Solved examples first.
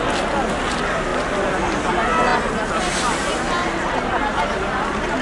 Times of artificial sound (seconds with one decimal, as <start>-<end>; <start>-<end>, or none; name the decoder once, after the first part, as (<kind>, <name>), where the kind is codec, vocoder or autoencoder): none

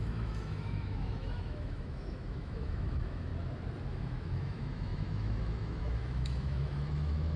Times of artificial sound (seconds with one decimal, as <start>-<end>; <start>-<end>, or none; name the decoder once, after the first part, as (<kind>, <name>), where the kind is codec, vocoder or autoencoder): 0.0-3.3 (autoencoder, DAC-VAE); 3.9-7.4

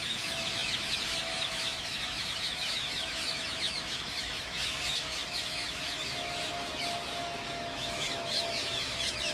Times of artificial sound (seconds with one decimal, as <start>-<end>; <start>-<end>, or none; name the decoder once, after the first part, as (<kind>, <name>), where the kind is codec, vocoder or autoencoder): 0.0-9.3 (autoencoder, DAC-VAE)

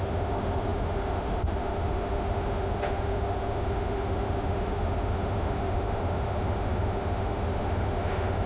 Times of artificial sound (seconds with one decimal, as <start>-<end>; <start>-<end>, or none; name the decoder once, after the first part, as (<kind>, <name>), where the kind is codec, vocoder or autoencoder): 0.0-8.5 (autoencoder, DAC-VAE)